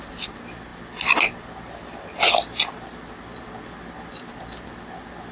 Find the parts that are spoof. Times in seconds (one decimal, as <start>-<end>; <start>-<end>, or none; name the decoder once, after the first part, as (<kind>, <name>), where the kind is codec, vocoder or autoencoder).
none